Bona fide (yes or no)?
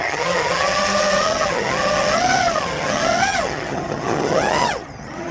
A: no